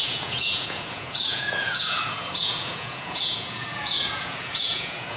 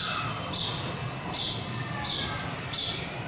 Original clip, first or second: second